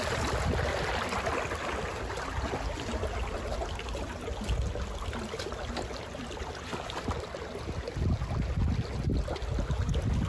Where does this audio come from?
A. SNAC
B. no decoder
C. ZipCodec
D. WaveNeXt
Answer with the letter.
B